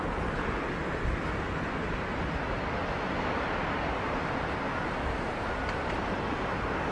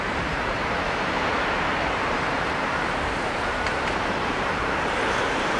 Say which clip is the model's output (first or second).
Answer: second